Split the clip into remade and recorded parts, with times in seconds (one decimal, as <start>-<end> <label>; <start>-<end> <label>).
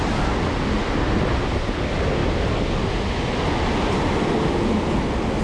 0.0-5.4 recorded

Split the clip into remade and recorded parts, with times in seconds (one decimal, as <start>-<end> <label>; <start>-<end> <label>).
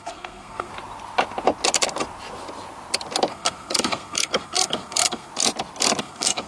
0.0-0.7 remade; 0.7-3.3 recorded; 3.3-5.3 remade; 5.3-6.0 recorded; 6.0-6.5 remade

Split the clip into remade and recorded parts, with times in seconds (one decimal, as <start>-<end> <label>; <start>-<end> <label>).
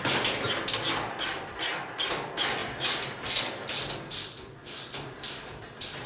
0.0-6.1 recorded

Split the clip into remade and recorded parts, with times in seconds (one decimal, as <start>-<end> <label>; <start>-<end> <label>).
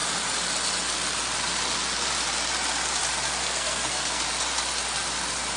0.0-3.4 recorded; 3.4-4.2 remade; 4.2-5.6 recorded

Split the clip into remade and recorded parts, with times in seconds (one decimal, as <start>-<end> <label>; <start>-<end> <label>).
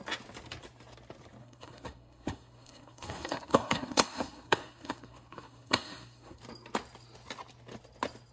0.0-1.4 recorded; 1.4-6.4 remade; 6.4-8.3 recorded